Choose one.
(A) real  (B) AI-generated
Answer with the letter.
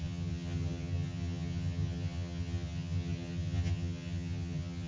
B